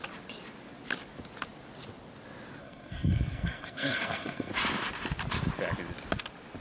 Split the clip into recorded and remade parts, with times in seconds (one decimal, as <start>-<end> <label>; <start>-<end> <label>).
0.0-2.6 recorded; 2.6-4.5 remade; 4.5-6.6 recorded